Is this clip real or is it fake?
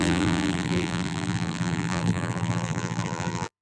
fake